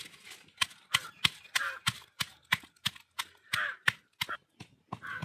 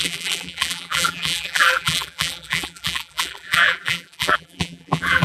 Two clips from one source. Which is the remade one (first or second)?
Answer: second